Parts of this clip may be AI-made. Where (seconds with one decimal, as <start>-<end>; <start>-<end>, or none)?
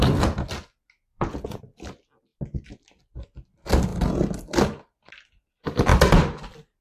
1.1-1.6